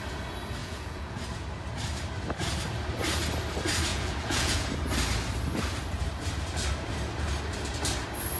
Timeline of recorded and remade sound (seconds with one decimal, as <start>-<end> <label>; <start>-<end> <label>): 0.0-0.6 recorded; 0.6-1.2 remade; 1.2-3.9 recorded; 3.9-4.7 remade; 4.7-8.4 recorded

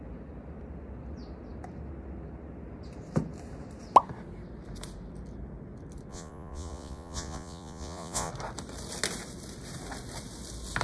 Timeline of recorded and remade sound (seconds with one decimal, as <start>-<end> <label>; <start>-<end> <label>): 0.0-6.1 recorded; 6.1-8.3 remade; 8.3-10.8 recorded

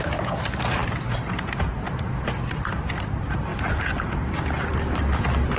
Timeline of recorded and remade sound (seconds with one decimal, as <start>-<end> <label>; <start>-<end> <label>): 0.0-0.8 recorded; 0.8-1.4 remade; 1.4-5.6 recorded

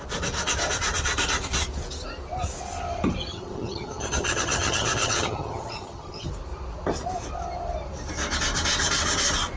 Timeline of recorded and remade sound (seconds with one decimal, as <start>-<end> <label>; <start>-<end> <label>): 0.0-3.3 recorded; 3.3-6.3 remade; 6.3-9.6 recorded

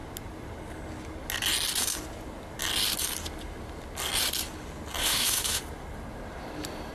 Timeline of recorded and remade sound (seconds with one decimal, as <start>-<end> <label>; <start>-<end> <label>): 0.0-5.0 recorded; 5.0-5.6 remade; 5.6-6.9 recorded